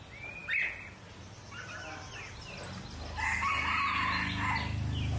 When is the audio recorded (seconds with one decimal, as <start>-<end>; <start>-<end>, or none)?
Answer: 0.0-5.2